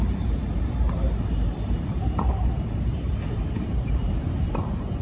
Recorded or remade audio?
remade